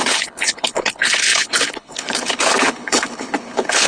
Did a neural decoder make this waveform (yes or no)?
yes